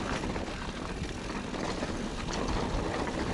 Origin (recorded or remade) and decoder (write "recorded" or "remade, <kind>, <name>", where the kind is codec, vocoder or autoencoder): recorded